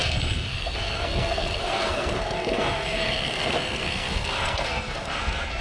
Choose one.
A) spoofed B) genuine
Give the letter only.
A